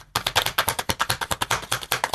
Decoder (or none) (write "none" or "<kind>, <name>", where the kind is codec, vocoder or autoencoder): none